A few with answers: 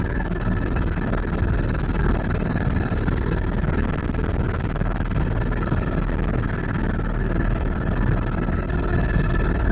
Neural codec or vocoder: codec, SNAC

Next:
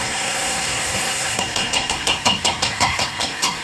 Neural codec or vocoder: codec, SNAC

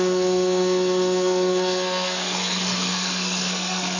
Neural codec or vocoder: codec, SNAC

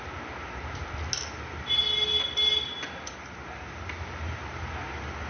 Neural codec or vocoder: none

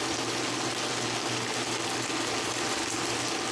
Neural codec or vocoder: none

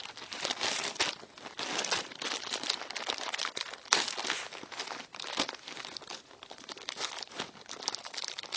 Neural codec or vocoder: none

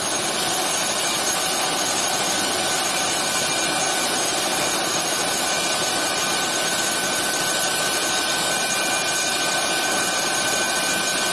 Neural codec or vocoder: none